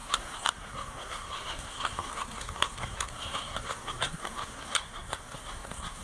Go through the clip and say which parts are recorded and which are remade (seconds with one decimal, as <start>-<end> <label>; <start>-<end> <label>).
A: 0.0-6.0 remade